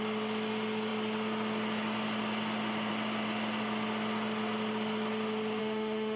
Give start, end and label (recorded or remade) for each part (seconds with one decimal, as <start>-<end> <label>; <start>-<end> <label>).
0.0-5.6 recorded; 5.6-6.2 remade